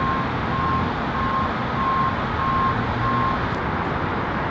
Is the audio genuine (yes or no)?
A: yes